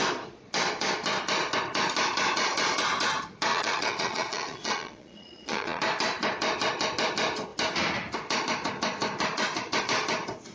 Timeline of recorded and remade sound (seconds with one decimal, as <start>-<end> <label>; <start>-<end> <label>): 0.0-3.5 recorded; 3.5-5.8 remade; 5.8-10.5 recorded